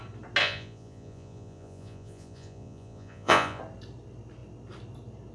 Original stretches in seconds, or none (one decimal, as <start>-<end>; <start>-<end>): 0.0-0.4; 3.6-5.3